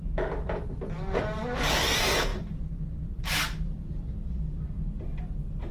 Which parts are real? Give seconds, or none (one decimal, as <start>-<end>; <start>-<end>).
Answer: 0.0-5.7